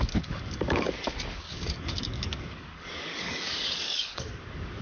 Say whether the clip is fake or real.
fake